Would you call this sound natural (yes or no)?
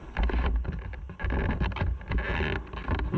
yes